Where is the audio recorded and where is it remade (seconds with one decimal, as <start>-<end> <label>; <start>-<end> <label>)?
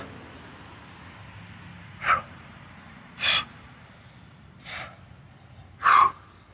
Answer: 0.0-1.8 recorded; 1.8-4.1 remade; 4.1-6.5 recorded